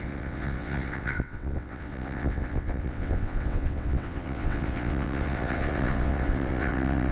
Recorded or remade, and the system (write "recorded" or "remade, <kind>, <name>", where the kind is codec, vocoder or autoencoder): remade, vocoder, WaveNeXt